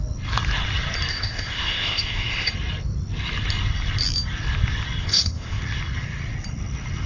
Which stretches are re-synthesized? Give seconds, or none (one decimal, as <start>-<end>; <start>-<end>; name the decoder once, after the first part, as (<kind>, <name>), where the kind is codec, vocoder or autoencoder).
1.1-2.5 (codec, ZipCodec); 5.0-5.6